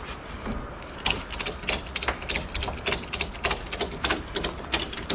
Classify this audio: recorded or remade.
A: recorded